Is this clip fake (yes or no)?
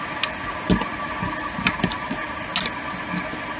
no